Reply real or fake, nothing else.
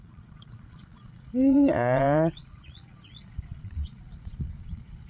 fake